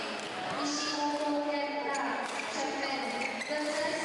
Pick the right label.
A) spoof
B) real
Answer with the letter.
B